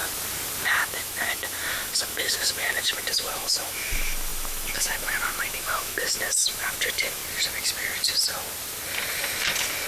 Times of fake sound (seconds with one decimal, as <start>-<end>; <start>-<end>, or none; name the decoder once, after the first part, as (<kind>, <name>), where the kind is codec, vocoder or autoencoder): 0.7-7.2 (autoencoder, DAC-VAE)